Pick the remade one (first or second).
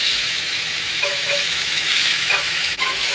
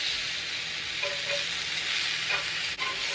first